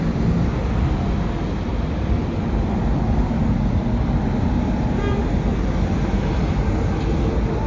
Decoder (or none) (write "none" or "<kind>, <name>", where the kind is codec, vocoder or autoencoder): none